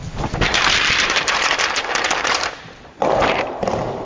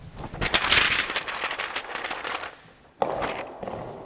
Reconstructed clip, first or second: first